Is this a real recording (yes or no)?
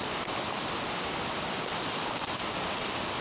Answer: yes